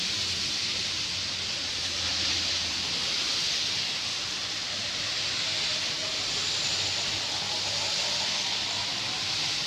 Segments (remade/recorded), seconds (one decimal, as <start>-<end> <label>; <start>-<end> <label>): 0.0-9.7 recorded